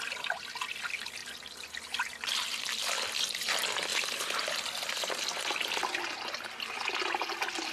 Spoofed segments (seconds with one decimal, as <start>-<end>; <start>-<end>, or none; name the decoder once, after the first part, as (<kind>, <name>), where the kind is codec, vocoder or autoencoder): 3.9-5.1 (vocoder, BigVGAN v2)